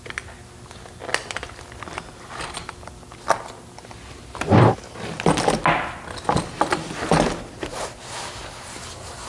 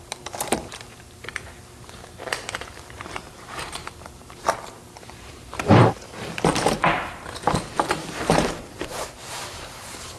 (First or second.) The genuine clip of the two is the first